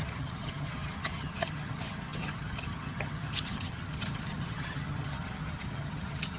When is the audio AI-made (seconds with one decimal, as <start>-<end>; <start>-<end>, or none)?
0.0-6.4